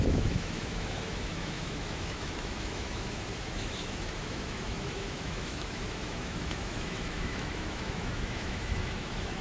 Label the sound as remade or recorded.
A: remade